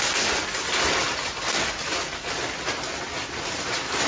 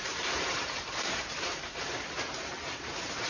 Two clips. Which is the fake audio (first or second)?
second